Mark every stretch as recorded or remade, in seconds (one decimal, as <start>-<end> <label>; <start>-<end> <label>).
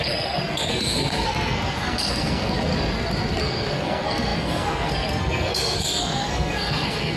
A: 0.0-2.7 remade; 2.7-3.4 recorded; 3.4-7.2 remade